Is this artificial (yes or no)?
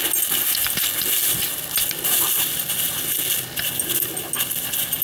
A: no